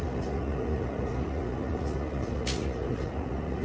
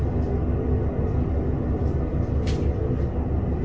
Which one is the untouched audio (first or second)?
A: second